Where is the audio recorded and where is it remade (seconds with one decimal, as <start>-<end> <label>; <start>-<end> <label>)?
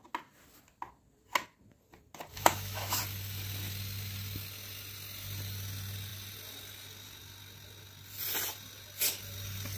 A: 0.0-2.3 recorded; 2.3-3.0 remade; 3.0-9.8 recorded